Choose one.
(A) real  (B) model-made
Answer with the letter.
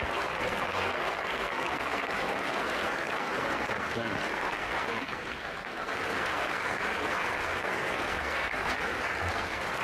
B